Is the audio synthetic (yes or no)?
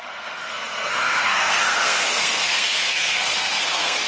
yes